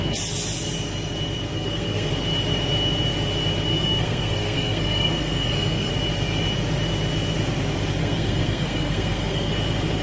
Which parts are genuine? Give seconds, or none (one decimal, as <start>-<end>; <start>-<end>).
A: 0.0-1.5; 2.1-3.7; 5.9-8.0; 9.5-10.0